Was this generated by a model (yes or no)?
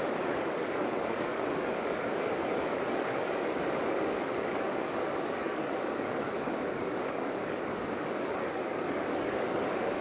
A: yes